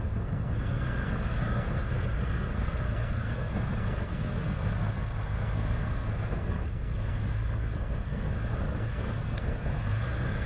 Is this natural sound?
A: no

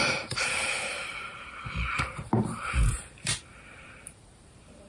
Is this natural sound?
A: no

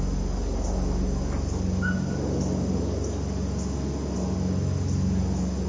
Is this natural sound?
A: yes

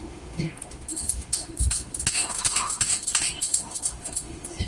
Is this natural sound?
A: no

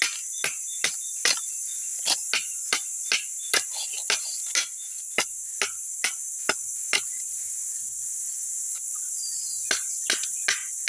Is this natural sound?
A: yes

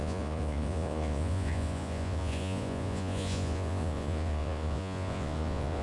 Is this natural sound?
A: no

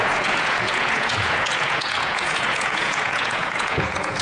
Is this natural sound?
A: no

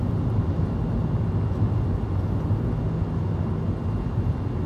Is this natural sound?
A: yes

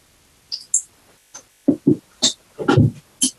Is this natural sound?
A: yes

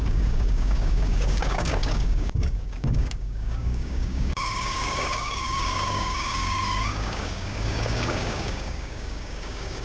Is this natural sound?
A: no